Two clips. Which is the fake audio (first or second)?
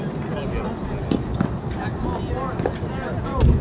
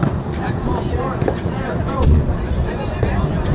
second